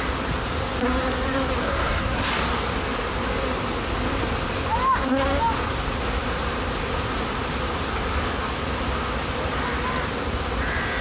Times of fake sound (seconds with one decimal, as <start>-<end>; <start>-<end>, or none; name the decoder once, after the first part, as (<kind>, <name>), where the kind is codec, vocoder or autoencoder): 1.6-2.3 (codec, SNAC)